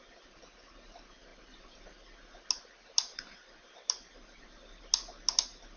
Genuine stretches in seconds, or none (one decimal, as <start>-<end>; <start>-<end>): 0.0-5.8